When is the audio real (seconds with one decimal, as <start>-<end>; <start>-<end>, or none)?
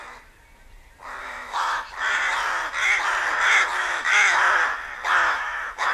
0.0-1.2; 1.9-3.8; 4.4-5.1